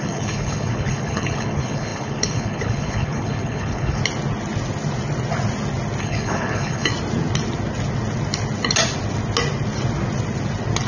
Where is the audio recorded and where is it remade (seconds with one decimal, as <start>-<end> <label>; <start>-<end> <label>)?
0.0-4.0 remade; 4.0-6.0 recorded; 6.0-6.9 remade; 6.9-10.9 recorded